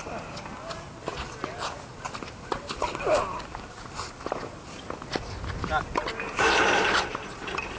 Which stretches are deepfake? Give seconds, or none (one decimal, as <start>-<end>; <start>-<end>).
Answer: none